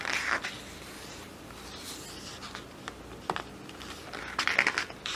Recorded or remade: recorded